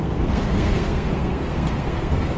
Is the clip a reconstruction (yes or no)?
yes